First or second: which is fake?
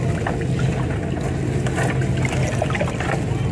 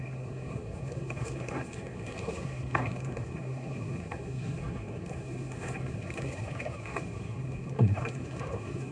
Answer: second